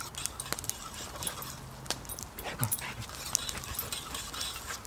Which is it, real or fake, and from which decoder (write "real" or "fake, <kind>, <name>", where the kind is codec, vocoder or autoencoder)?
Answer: real